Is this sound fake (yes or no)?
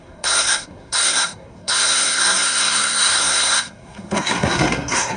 yes